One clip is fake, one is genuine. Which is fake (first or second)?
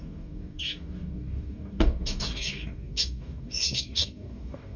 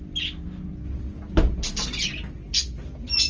first